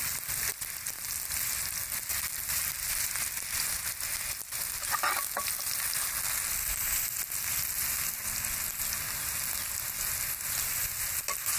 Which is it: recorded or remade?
recorded